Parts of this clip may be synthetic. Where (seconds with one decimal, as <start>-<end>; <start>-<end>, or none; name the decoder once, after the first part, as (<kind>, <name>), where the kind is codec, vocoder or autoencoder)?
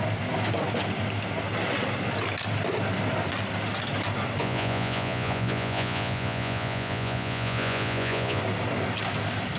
4.4-8.4 (vocoder, Vocos)